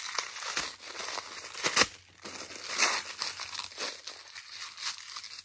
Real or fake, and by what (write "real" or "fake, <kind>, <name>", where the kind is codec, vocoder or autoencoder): real